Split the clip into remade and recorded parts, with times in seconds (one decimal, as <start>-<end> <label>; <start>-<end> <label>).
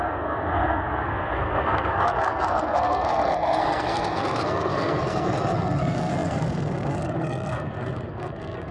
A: 0.0-8.7 remade